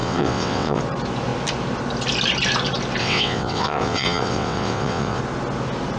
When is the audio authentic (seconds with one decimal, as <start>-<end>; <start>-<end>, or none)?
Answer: 0.8-3.0; 5.2-6.0